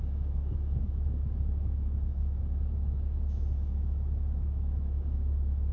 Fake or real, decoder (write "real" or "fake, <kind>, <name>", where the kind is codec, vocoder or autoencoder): fake, autoencoder, DAC-VAE